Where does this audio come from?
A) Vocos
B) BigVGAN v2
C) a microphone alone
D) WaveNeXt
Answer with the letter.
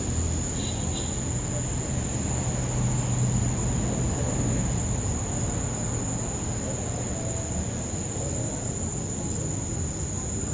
C